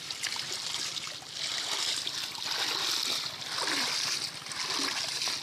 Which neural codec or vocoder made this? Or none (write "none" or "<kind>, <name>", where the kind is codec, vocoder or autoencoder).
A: none